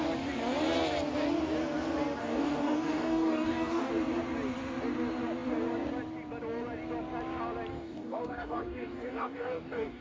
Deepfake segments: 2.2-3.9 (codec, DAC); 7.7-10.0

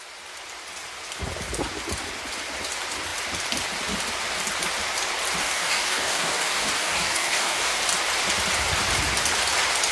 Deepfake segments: 5.4-7.8 (codec, DAC)

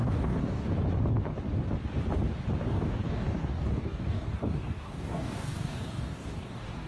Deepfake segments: 0.0-0.7 (codec, DAC); 2.6-6.9

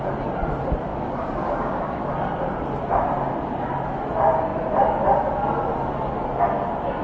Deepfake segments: 0.9-2.0 (codec, DAC)

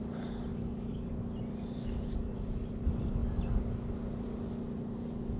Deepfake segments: 0.5-1.1 (codec, DAC)

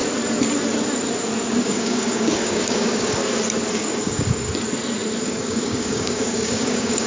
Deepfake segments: 1.6-3.2 (codec, DAC); 3.7-4.5; 5.2-7.1